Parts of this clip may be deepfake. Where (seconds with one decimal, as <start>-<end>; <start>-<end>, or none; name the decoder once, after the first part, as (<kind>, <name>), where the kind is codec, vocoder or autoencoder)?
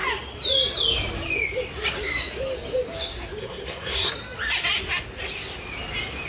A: 3.4-4.1 (codec, SNAC)